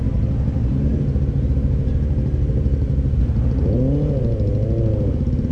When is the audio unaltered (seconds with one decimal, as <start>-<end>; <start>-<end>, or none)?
0.0-5.5